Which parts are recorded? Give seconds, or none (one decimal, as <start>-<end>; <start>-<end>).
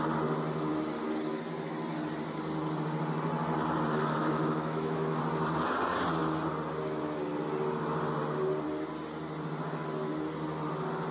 0.0-4.2; 5.2-11.1